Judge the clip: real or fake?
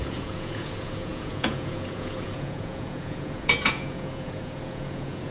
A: fake